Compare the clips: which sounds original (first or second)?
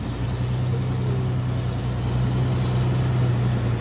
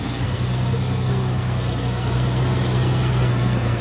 first